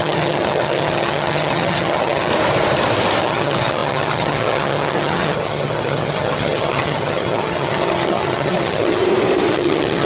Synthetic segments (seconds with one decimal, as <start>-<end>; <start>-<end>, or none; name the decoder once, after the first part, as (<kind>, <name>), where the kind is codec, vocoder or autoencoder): 0.0-2.3 (vocoder, HiFi-GAN); 3.2-9.0; 9.5-10.1